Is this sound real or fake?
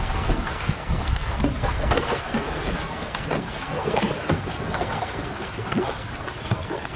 fake